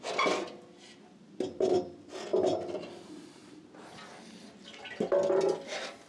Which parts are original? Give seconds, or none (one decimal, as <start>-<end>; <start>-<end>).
0.0-6.1